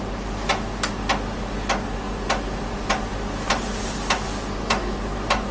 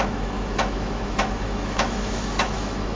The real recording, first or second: first